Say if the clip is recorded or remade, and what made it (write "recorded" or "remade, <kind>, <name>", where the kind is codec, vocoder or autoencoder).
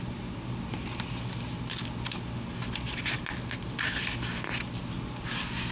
recorded